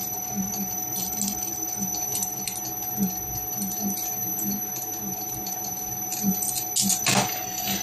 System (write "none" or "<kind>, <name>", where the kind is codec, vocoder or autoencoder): none